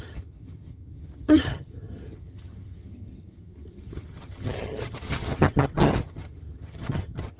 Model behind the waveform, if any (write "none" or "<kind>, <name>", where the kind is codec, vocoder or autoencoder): vocoder, HiFi-GAN